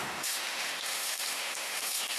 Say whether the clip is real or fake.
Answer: fake